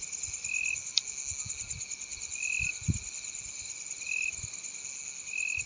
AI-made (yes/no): no